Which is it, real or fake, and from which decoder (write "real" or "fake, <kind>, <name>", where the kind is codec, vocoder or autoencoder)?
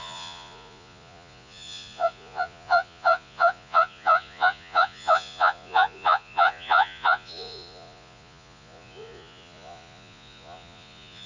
fake, vocoder, Vocos